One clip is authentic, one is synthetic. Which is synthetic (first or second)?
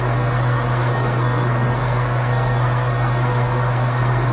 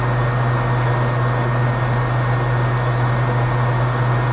first